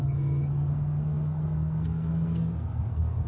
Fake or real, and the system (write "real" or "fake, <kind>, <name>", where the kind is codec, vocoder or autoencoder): fake, codec, SNAC